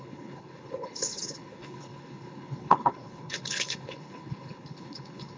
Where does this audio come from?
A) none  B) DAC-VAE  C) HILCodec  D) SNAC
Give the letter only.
C